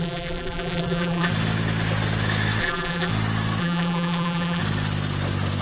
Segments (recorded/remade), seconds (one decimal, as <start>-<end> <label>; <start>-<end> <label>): 0.0-1.3 remade; 1.3-2.6 recorded; 2.6-3.1 remade; 3.1-3.6 recorded; 3.6-4.6 remade; 4.6-5.6 recorded